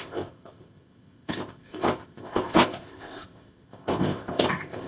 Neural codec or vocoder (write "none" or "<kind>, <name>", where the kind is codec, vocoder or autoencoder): codec, ZipCodec